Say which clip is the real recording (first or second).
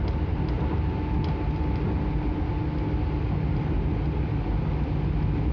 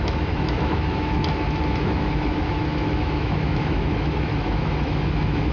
first